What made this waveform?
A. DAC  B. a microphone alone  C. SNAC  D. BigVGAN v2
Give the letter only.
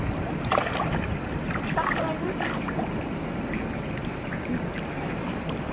B